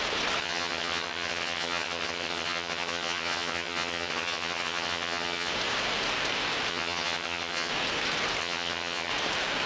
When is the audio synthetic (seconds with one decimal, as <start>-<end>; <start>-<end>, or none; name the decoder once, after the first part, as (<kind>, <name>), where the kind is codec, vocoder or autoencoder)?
0.4-5.5 (vocoder, HiFi-GAN); 6.7-7.7; 8.4-9.1